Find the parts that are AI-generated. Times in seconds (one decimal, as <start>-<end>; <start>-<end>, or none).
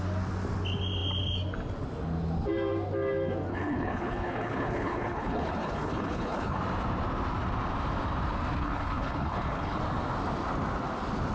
3.5-6.6; 8.6-9.8